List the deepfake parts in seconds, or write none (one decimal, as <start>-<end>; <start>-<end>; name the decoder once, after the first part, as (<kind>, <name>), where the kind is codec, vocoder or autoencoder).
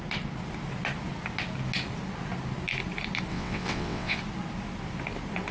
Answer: 3.3-4.2 (vocoder, WaveNeXt)